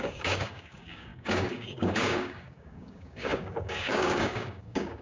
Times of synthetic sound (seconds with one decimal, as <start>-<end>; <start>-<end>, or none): 0.0-5.0